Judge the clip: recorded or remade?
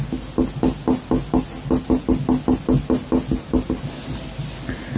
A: recorded